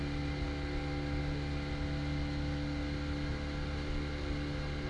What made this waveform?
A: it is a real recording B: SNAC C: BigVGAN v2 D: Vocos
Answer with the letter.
A